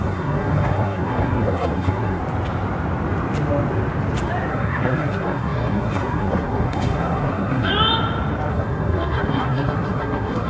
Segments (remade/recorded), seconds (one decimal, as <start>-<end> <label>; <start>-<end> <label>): 0.0-2.2 remade; 2.2-4.5 recorded; 4.5-7.7 remade; 7.7-8.5 recorded; 8.5-10.5 remade